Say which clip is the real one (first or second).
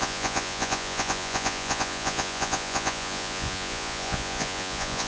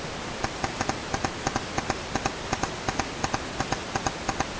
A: second